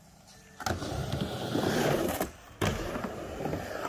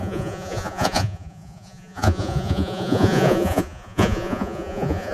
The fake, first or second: second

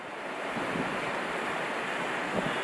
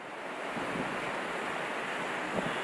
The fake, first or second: first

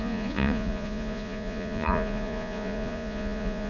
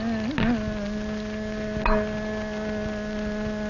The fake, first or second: first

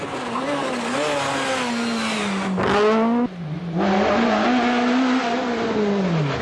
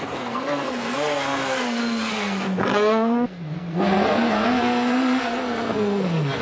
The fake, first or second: second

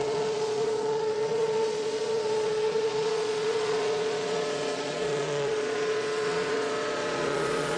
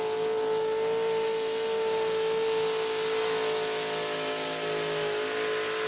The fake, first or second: first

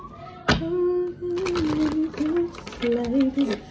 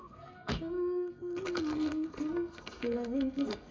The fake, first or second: second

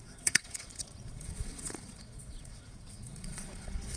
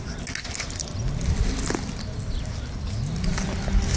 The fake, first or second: first